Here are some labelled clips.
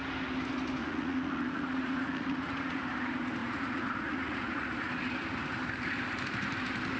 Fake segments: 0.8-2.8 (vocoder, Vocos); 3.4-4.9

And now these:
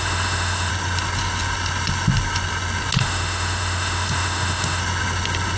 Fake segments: 0.0-0.7 (autoencoder, DAC-VAE); 3.0-4.8

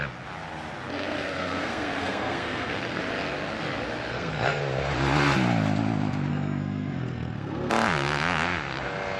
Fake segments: 0.9-3.0 (codec, SNAC); 4.1-4.6; 6.3-7.7

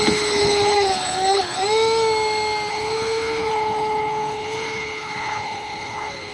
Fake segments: 0.0-1.6 (codec, HILCodec); 2.7-6.3